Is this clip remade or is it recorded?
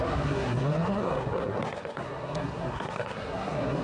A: remade